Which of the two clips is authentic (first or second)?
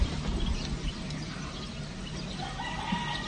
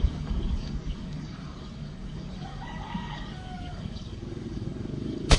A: first